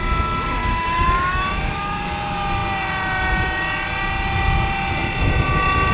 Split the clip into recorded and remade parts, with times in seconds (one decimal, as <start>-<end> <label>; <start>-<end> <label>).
0.0-0.6 recorded; 0.6-2.0 remade; 2.0-5.9 recorded